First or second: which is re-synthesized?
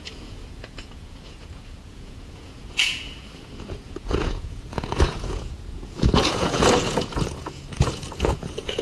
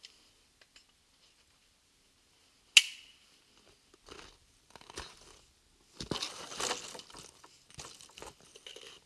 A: first